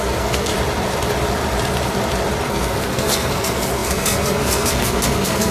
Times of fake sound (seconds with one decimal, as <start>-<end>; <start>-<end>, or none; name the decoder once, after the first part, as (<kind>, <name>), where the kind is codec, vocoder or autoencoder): 0.0-0.5 (codec, SNAC); 2.5-5.5